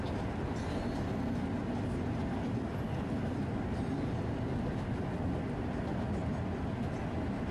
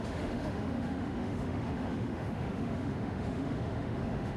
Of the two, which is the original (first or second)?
first